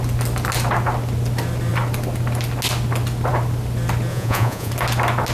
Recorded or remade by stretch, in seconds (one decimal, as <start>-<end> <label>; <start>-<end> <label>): 0.0-4.1 recorded; 4.1-4.7 remade; 4.7-5.3 recorded